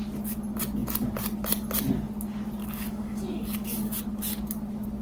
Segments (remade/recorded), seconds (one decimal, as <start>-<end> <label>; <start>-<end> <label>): 0.0-2.6 recorded; 2.6-4.0 remade; 4.0-5.0 recorded